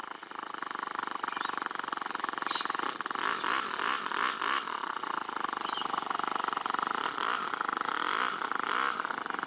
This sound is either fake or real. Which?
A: real